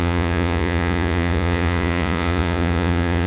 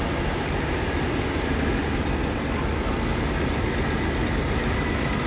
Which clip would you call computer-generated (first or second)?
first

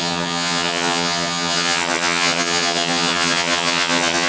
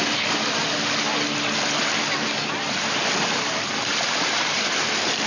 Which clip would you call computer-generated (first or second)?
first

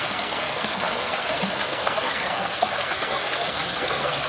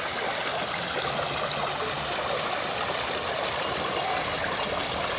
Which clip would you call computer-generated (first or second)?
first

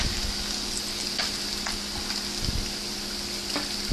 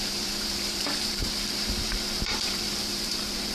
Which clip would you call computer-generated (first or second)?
second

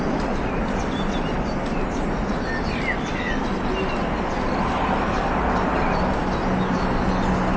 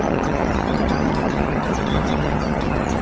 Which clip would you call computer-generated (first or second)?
second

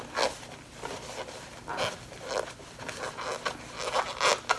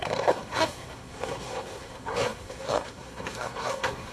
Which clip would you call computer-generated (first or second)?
second